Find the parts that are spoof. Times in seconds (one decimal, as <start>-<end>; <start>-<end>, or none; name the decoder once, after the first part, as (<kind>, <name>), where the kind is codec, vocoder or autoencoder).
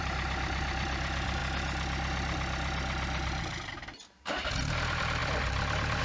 0.0-1.4 (vocoder, BigVGAN v2); 4.2-6.0